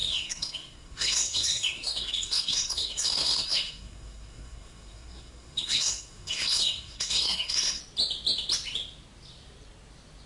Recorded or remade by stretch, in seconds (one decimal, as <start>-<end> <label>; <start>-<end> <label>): 0.0-7.8 remade; 7.8-10.3 recorded